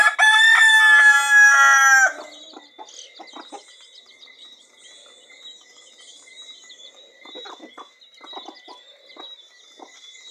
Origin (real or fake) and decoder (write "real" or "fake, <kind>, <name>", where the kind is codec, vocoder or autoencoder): real